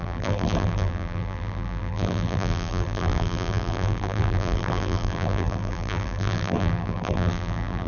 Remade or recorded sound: remade